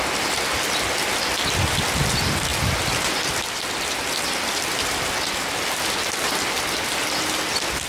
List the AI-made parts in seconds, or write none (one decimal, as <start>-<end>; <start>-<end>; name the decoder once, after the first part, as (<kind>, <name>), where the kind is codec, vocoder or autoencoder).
none